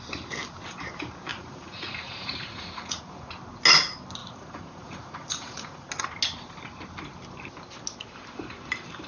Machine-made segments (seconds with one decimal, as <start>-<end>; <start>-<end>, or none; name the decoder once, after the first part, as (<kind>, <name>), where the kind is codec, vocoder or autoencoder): 1.3-3.3 (vocoder, Vocos); 4.2-5.9